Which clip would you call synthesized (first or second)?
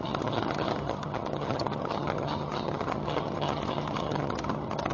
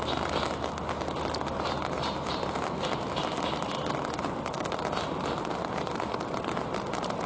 first